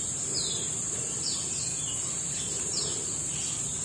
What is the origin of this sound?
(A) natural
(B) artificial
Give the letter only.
B